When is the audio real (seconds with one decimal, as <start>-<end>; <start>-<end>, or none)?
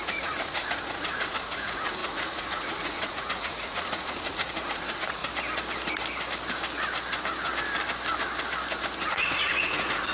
5.2-9.1